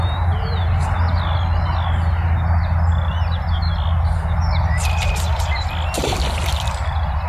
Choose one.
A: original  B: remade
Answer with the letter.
A